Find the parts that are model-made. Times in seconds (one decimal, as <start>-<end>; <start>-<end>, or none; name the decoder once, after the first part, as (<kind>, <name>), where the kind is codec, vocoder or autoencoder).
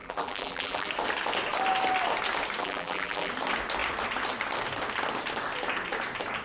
0.0-0.9 (vocoder, BigVGAN v2); 2.6-3.3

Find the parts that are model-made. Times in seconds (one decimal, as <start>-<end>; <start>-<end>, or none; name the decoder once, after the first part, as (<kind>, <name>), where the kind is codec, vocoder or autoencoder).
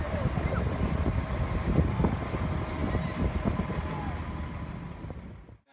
none